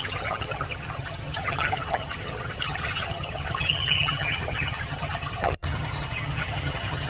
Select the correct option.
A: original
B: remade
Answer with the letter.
B